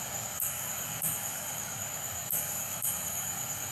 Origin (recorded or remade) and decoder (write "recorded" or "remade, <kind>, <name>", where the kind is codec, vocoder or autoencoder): remade, codec, DAC